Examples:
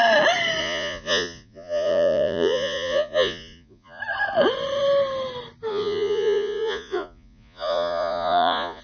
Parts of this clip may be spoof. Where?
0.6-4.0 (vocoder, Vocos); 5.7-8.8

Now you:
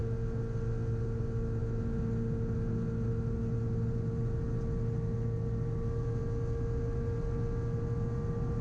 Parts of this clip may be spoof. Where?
none

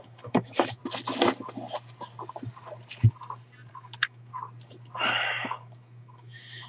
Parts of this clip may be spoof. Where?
0.0-0.8 (autoencoder, DAC-VAE); 3.7-4.3; 5.1-6.7

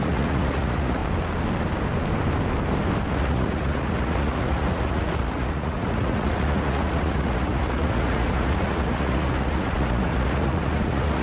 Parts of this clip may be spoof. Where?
0.0-1.0 (vocoder, Vocos); 3.1-11.2